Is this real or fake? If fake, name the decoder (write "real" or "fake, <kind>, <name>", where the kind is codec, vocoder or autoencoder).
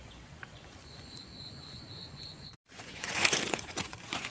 fake, vocoder, Vocos